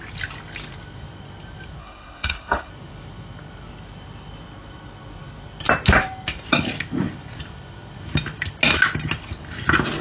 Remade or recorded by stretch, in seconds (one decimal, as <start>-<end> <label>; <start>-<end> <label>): 0.0-1.8 recorded; 1.8-2.7 remade; 2.7-10.0 recorded